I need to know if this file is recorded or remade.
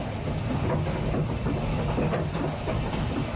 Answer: recorded